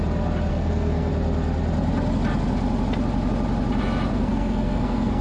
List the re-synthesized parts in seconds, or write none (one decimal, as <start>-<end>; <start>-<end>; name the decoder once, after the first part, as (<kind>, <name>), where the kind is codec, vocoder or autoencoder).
0.5-1.1 (codec, SNAC); 4.1-5.2